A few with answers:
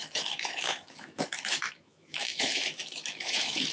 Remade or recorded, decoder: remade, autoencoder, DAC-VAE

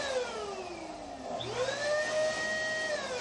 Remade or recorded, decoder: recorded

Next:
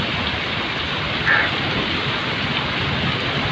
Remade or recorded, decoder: recorded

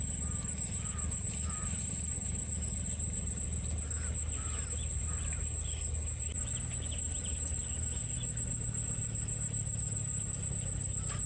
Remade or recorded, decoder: recorded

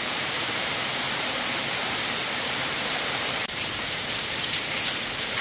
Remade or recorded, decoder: remade, vocoder, BigVGAN v2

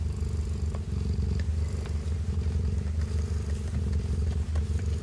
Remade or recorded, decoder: recorded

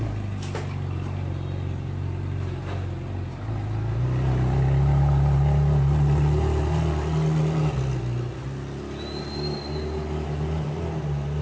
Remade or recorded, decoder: recorded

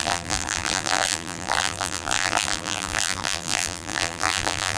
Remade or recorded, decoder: remade, vocoder, BigVGAN v2